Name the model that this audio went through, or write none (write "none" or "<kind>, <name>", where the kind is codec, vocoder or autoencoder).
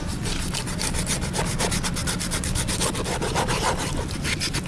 none